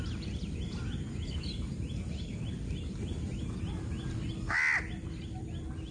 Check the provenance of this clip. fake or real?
real